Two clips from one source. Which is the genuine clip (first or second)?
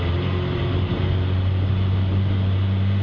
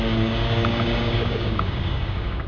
first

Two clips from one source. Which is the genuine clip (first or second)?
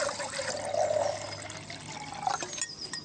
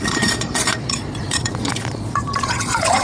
first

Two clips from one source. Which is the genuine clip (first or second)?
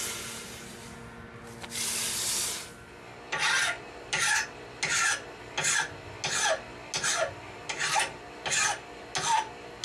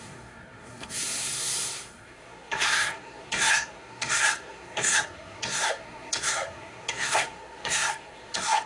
first